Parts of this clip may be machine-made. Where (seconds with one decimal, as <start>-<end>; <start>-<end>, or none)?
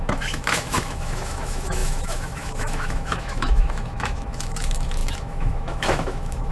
0.0-6.5